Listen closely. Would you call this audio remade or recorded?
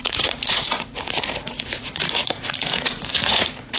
remade